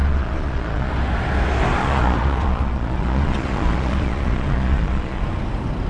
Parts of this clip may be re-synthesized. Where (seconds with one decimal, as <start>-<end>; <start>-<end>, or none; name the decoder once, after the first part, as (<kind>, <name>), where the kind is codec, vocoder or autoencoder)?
0.0-0.9 (vocoder, Vocos); 1.8-5.2